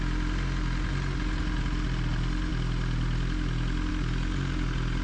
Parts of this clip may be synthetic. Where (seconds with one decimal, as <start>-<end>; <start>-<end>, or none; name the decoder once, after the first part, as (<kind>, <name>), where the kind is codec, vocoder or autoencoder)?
none